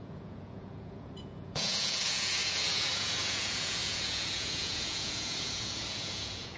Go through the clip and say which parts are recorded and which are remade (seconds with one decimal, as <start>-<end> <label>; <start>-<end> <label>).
0.0-6.6 remade